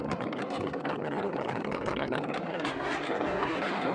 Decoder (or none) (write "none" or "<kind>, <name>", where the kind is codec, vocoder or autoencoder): codec, SNAC